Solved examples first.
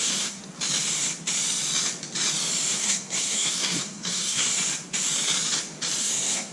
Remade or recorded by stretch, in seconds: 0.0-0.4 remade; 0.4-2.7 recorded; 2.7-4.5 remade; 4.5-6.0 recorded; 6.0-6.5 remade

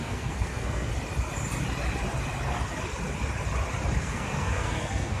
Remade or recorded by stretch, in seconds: 0.0-0.9 remade; 0.9-4.0 recorded; 4.0-5.2 remade

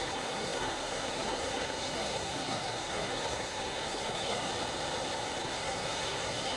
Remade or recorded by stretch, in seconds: 0.0-4.5 remade; 4.5-5.4 recorded; 5.4-6.6 remade

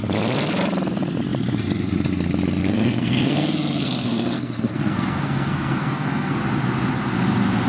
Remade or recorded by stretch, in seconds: 0.0-2.6 recorded; 2.6-6.4 remade; 6.4-7.7 recorded

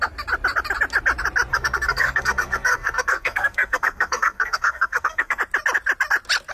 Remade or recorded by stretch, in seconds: 0.0-1.5 recorded; 1.5-5.4 remade; 5.4-6.5 recorded

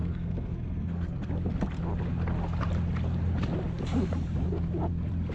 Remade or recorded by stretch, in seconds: 0.0-1.3 remade; 1.3-5.3 recorded

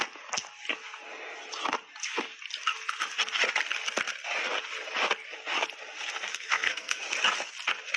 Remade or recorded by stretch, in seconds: 0.0-6.3 recorded; 6.3-7.0 remade; 7.0-8.0 recorded

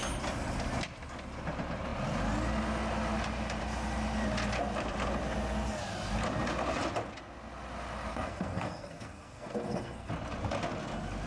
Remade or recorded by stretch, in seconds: 0.0-8.1 recorded; 8.1-10.1 remade; 10.1-11.3 recorded